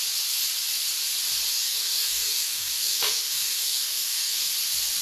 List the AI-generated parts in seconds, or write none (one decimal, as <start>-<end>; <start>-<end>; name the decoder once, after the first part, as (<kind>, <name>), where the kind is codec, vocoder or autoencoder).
1.5-4.5 (codec, DAC)